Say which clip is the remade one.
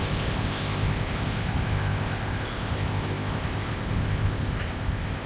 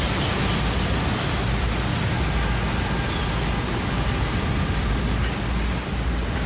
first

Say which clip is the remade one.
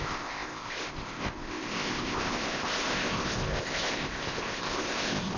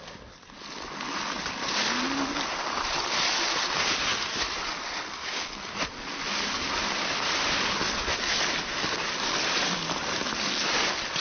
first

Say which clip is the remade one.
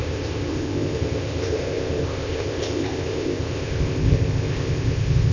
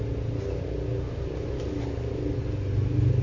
first